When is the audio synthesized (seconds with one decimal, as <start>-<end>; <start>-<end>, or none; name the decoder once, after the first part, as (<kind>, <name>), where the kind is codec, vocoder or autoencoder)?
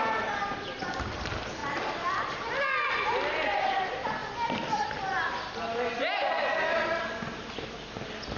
none